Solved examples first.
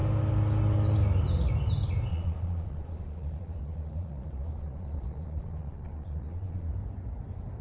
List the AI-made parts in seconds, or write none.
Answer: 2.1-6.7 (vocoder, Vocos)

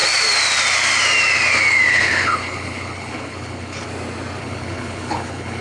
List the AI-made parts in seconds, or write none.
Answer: 1.9-3.9 (codec, HILCodec); 4.4-5.6

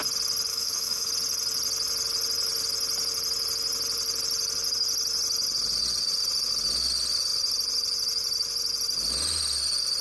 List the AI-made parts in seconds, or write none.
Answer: 0.5-1.1 (autoencoder, DAC-VAE)

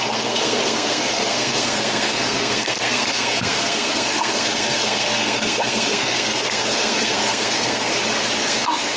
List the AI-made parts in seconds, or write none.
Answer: 0.0-7.9 (codec, SNAC); 8.4-9.0

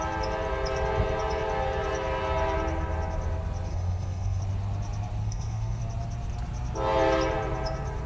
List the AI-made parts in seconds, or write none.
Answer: 3.7-4.4 (codec, SNAC); 5.2-5.8